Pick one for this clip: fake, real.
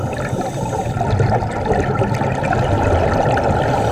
real